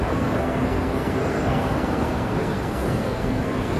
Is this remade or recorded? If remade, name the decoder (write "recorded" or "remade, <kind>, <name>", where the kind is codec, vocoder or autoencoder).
remade, codec, SNAC